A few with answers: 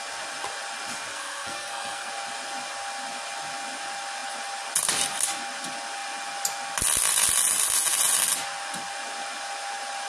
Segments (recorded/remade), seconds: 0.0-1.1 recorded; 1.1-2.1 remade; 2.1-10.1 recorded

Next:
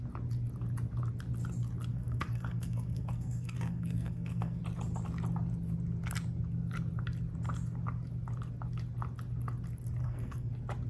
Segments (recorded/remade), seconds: 0.0-1.9 recorded; 1.9-4.6 remade; 4.6-10.0 recorded; 10.0-10.5 remade; 10.5-10.9 recorded

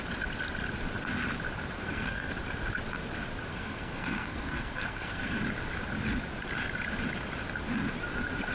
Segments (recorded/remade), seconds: 0.0-1.8 recorded; 1.8-2.3 remade; 2.3-3.5 recorded; 3.5-5.4 remade; 5.4-8.5 recorded

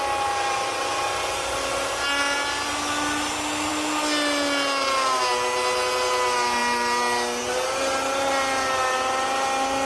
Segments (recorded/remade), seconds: 0.0-9.8 recorded

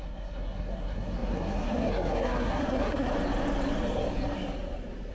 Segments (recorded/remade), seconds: 0.0-3.1 remade; 3.1-5.1 recorded